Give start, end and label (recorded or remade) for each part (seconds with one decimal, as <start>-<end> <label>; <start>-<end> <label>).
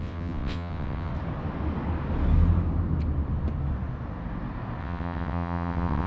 0.0-1.1 remade; 1.1-4.8 recorded; 4.8-6.1 remade